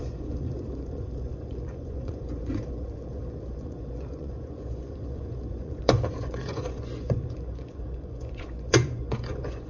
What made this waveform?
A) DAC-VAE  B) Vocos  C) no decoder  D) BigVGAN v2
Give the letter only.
B